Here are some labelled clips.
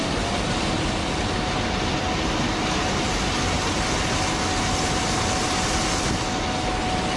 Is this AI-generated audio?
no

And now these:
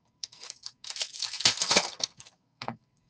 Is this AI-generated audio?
yes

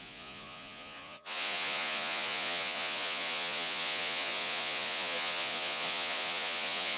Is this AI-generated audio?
yes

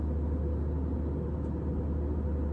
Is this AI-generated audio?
no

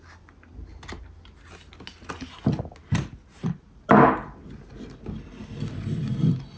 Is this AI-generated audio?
no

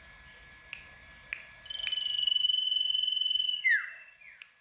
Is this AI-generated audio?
no